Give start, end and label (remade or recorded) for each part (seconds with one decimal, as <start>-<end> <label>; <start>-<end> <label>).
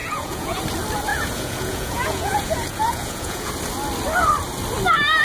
0.0-0.6 remade; 0.6-1.1 recorded; 1.1-3.5 remade; 3.5-5.2 recorded